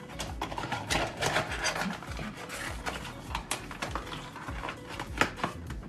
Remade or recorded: recorded